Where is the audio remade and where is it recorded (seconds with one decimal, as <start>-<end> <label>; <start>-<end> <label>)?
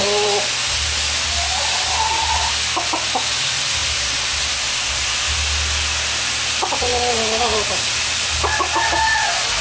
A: 0.0-9.6 recorded